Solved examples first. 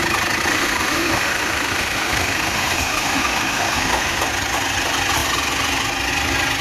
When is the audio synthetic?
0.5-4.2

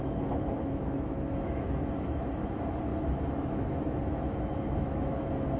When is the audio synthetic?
0.0-5.6

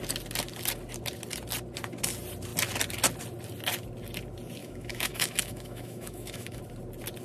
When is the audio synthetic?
4.6-6.6